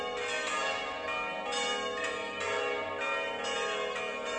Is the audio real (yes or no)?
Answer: yes